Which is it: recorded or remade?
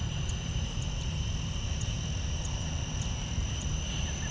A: remade